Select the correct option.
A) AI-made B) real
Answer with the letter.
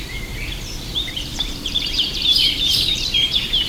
A